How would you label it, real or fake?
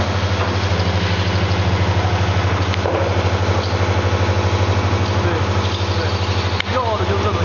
real